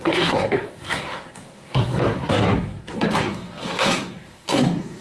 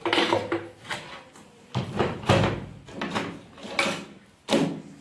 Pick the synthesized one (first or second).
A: first